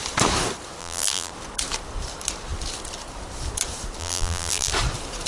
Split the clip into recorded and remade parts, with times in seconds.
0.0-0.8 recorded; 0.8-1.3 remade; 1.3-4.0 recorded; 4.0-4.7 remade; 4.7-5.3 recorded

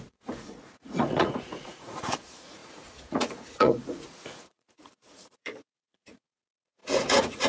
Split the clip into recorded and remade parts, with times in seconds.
0.0-7.5 remade

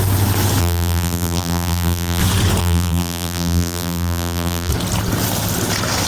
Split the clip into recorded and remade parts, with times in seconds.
0.0-0.6 recorded; 0.6-2.2 remade; 2.2-2.6 recorded; 2.6-4.7 remade; 4.7-6.1 recorded

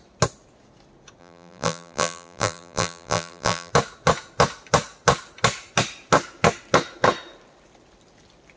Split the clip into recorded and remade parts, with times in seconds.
0.0-1.2 recorded; 1.2-3.7 remade; 3.7-8.6 recorded

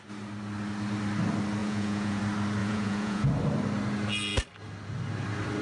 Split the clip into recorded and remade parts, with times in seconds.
0.0-1.6 recorded; 1.6-2.2 remade; 2.2-2.6 recorded; 2.6-3.3 remade; 3.3-5.6 recorded

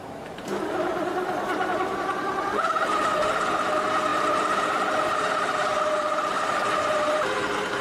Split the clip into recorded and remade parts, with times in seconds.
0.0-7.8 remade